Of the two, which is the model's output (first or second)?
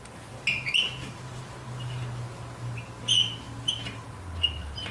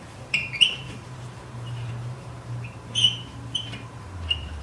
second